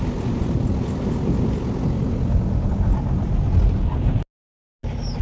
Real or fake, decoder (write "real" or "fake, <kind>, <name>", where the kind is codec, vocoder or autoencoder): real